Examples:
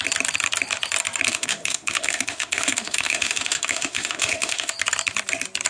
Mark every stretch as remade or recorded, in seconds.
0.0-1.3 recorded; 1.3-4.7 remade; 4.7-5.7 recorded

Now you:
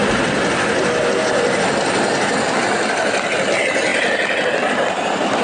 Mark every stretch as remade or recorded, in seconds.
0.0-5.4 recorded

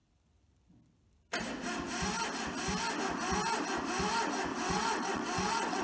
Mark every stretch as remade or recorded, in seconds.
0.0-4.5 recorded; 4.5-5.8 remade